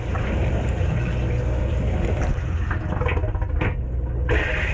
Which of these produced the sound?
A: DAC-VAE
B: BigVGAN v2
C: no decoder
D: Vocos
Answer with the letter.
C